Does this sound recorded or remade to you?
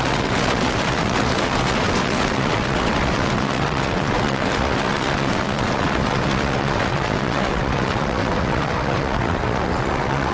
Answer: remade